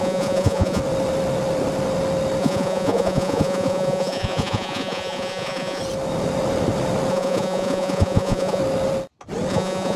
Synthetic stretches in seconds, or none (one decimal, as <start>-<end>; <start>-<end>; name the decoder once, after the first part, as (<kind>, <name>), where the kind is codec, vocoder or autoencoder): 0.0-0.8 (vocoder, Vocos); 2.4-5.8; 7.1-8.6; 9.5-10.0